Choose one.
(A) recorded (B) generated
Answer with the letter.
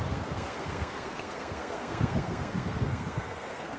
B